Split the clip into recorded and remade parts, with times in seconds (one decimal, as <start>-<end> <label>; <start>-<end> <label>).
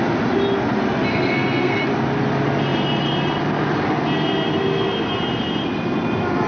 0.0-1.1 recorded; 1.1-1.8 remade; 1.8-6.5 recorded